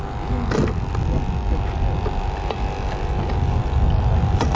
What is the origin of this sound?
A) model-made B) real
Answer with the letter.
B